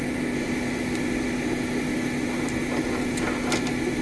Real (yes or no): yes